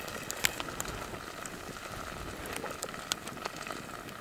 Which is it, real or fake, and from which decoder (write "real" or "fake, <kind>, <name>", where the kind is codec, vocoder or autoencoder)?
real